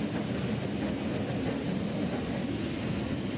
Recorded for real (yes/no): yes